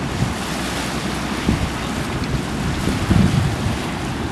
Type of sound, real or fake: real